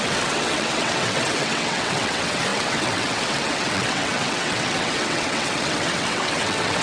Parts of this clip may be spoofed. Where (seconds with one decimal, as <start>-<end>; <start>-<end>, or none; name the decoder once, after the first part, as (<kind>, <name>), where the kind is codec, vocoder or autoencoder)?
0.0-6.8 (vocoder, WaveNeXt)